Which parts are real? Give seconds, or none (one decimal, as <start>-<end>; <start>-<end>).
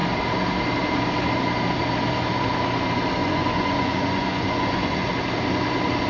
0.0-3.2; 5.1-6.1